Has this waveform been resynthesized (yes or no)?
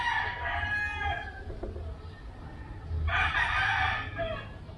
no